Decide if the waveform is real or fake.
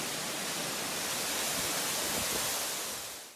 real